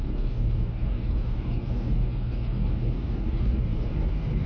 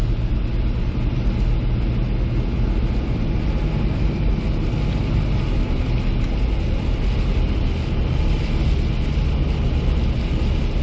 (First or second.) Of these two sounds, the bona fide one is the second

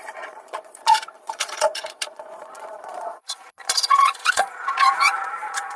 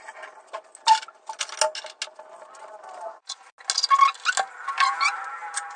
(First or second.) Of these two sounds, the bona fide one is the second